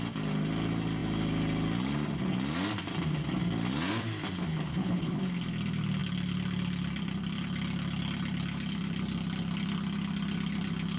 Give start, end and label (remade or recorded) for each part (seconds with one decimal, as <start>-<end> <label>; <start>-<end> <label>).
0.0-4.5 recorded; 4.5-5.2 remade; 5.2-11.0 recorded